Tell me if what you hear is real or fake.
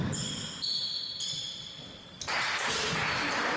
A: real